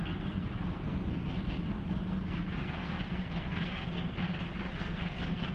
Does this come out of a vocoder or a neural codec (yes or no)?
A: yes